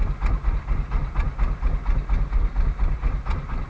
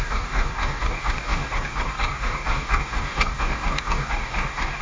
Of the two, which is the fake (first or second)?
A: second